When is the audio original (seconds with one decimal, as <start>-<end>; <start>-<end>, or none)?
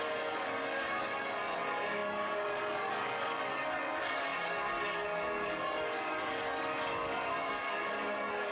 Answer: none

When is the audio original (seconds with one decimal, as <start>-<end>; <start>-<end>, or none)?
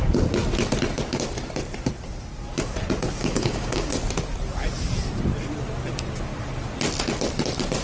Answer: 0.0-3.2; 3.9-7.8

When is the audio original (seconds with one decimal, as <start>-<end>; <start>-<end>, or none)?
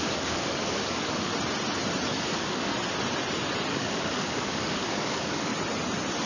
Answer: 1.3-2.1; 2.7-3.7; 5.5-6.3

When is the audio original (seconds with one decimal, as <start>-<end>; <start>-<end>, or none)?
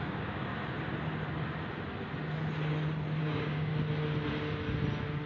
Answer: 0.5-3.2; 3.7-5.3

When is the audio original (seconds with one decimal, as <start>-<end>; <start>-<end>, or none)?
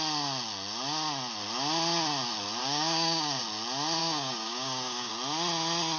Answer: 0.0-2.6; 3.4-4.0; 5.1-6.0